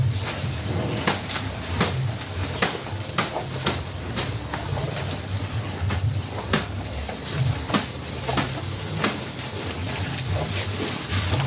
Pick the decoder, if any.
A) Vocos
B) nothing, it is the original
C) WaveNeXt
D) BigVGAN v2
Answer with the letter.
D